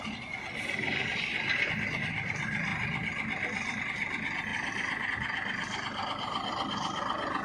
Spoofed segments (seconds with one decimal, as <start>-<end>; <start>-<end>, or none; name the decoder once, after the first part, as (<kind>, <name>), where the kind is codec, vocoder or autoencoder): 2.7-3.8 (vocoder, BigVGAN v2); 4.5-5.1